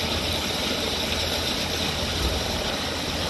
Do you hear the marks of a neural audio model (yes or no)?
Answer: no